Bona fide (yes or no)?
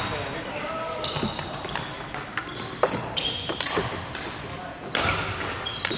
yes